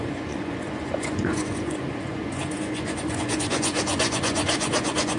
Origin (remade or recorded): remade